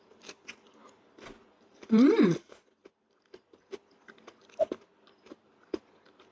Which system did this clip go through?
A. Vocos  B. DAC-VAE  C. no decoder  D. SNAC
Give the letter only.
C